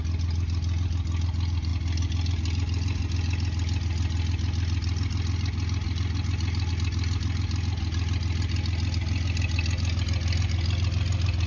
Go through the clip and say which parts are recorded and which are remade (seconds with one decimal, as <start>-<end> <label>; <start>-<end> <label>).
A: 0.0-11.5 recorded